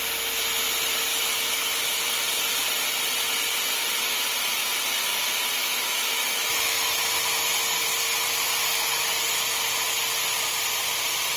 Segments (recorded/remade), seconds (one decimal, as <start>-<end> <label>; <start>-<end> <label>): 0.0-1.1 recorded; 1.1-2.2 remade; 2.2-5.6 recorded; 5.6-7.0 remade; 7.0-8.6 recorded; 8.6-9.2 remade; 9.2-11.4 recorded